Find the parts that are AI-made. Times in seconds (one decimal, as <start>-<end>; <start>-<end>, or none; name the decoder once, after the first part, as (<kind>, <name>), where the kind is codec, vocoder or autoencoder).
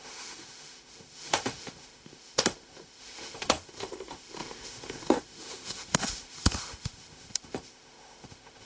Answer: 0.0-8.7 (autoencoder, DAC-VAE)